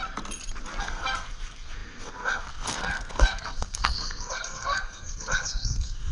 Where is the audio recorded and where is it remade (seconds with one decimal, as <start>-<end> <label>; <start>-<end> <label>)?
0.0-0.8 recorded; 0.8-6.1 remade